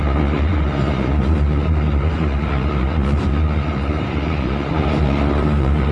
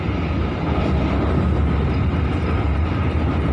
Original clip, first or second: second